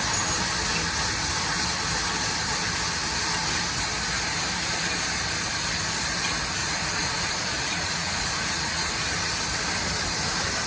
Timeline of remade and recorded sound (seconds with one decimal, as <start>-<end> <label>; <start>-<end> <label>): 0.0-6.6 recorded; 6.6-8.9 remade; 8.9-10.7 recorded